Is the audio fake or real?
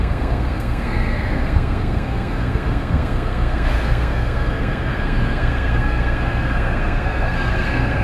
fake